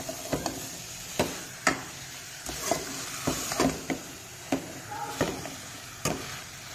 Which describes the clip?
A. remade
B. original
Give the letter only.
B